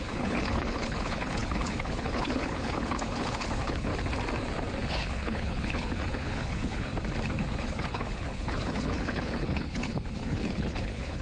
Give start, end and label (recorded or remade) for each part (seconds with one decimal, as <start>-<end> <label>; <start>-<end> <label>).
0.0-3.9 remade; 3.9-4.9 recorded; 4.9-6.9 remade; 6.9-7.5 recorded; 7.5-11.2 remade